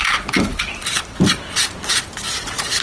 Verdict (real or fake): fake